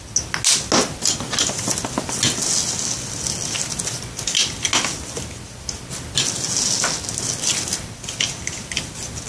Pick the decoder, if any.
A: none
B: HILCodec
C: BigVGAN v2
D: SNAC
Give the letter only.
A